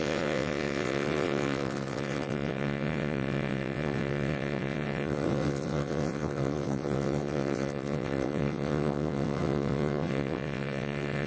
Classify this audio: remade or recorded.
remade